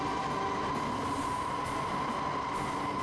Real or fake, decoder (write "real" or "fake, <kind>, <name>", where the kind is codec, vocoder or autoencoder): real